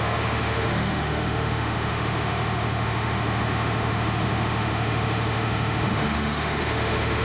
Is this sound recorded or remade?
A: remade